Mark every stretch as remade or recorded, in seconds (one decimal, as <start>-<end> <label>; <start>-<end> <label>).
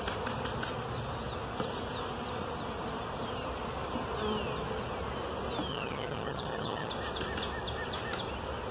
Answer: 0.0-5.7 recorded; 5.7-6.9 remade; 6.9-8.7 recorded